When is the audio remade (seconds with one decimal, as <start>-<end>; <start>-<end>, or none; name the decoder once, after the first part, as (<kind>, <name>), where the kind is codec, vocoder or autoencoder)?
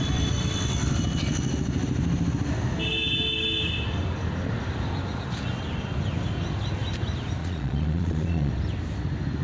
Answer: 7.4-8.5 (vocoder, Vocos)